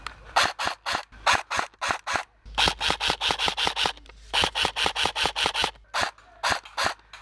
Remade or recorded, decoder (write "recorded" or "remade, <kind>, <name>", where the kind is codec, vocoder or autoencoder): recorded